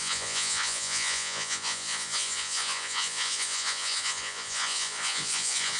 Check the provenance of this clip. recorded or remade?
remade